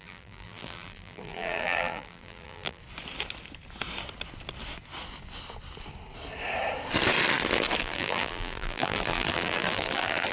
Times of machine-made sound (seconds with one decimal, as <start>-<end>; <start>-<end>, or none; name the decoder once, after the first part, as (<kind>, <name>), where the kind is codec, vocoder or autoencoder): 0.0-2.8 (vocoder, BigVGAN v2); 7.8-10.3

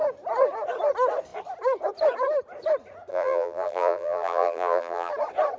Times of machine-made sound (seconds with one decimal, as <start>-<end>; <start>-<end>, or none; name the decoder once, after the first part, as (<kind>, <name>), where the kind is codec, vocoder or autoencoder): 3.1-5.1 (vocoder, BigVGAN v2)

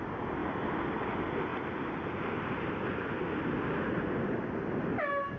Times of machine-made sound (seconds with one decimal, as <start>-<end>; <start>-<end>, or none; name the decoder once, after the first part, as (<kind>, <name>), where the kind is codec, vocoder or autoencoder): none

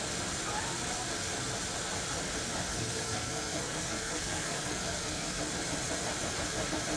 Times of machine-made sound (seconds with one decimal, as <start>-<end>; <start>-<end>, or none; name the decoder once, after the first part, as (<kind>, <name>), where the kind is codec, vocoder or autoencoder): 2.7-5.4 (codec, SNAC)